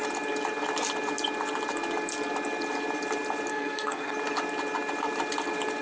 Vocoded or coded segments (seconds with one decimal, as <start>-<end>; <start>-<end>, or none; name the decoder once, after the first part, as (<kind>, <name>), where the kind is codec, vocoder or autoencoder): 3.5-4.1 (codec, SNAC)